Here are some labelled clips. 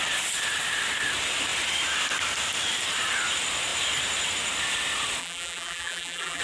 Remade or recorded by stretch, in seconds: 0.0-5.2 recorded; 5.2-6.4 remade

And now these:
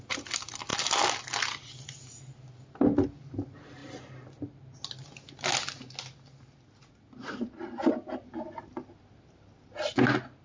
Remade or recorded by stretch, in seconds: 0.0-10.4 recorded

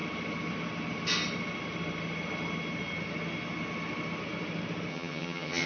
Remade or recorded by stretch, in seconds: 0.0-4.9 recorded; 4.9-5.7 remade

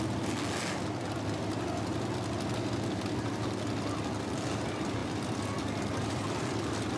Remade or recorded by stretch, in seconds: 0.0-7.0 recorded